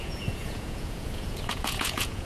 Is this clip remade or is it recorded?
remade